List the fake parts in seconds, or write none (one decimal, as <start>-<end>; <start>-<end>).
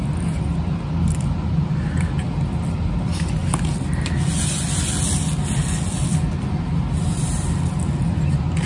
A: none